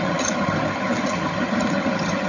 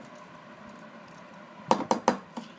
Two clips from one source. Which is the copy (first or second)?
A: first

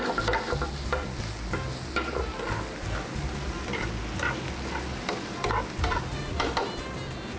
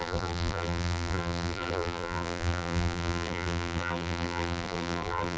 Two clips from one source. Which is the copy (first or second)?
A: second